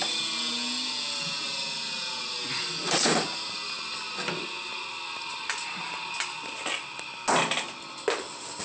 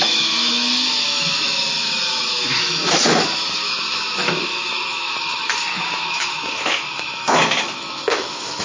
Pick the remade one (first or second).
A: second